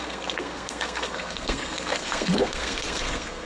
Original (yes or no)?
no